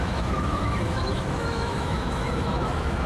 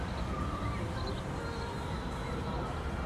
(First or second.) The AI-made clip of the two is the first